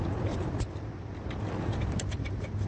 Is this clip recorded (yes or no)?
no